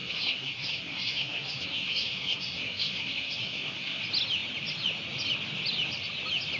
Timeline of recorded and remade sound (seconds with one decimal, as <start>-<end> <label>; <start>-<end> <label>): 0.0-4.0 remade; 4.0-6.6 recorded